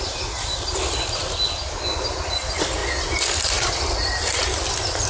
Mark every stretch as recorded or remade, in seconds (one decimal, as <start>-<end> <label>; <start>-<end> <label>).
0.0-5.1 recorded